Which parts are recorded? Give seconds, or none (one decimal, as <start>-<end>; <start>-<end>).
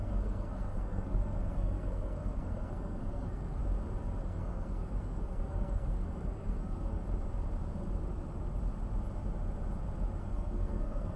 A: 3.6-4.2; 7.0-10.2